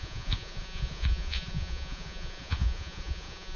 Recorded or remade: remade